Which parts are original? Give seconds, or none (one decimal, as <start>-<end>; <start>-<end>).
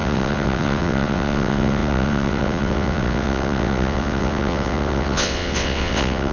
none